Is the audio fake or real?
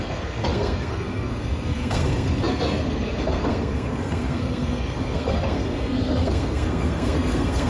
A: fake